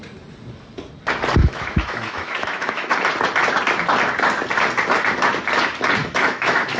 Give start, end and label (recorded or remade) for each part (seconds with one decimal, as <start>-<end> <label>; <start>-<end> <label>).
0.0-1.4 recorded; 1.4-2.9 remade; 2.9-6.0 recorded; 6.0-6.8 remade